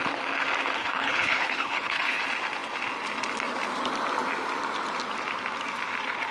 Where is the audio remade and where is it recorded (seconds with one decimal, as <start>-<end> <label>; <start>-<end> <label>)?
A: 0.0-0.8 recorded; 0.8-2.2 remade; 2.2-6.3 recorded